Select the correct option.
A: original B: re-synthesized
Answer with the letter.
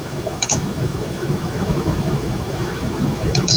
B